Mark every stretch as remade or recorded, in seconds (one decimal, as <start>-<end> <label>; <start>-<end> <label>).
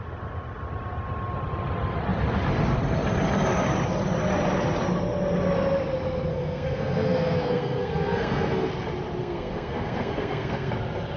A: 0.0-6.3 recorded; 6.3-8.7 remade; 8.7-9.2 recorded; 9.2-10.7 remade; 10.7-11.2 recorded